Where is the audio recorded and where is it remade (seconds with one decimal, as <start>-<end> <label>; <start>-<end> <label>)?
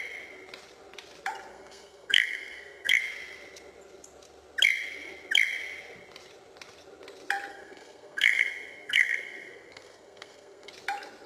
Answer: 0.0-1.5 recorded; 1.5-3.0 remade; 3.0-7.5 recorded; 7.5-10.7 remade; 10.7-11.3 recorded